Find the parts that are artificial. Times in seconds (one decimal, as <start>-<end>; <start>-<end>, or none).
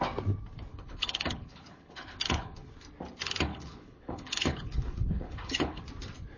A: 0.7-2.7; 3.5-5.8